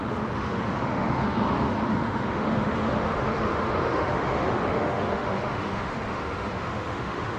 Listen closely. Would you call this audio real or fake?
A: fake